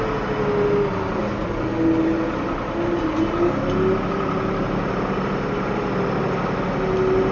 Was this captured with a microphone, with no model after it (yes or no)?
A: yes